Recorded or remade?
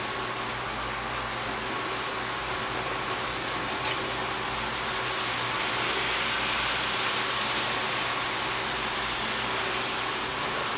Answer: recorded